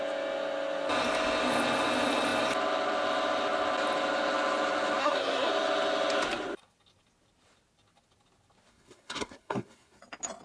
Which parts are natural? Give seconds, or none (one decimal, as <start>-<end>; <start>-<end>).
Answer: 0.0-5.0; 5.5-8.7; 10.0-10.4